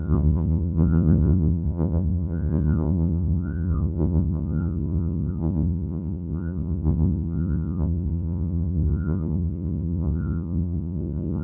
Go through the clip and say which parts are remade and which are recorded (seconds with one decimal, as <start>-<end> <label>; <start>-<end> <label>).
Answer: 0.0-11.4 remade